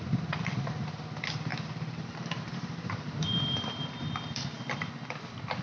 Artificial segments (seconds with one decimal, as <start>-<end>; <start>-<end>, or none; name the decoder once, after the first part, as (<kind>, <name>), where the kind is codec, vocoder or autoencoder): 1.5-4.9 (vocoder, BigVGAN v2)